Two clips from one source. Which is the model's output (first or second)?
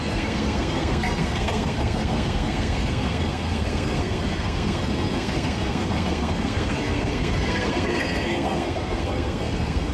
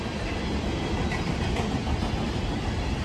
first